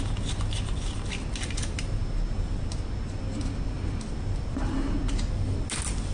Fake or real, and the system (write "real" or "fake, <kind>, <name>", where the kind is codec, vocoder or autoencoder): real